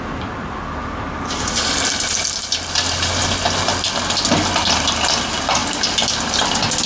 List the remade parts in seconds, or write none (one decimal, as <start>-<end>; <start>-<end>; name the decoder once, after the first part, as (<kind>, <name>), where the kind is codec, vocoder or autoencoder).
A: 0.8-1.9 (vocoder, BigVGAN v2); 5.6-6.9